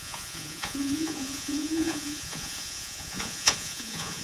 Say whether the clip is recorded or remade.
remade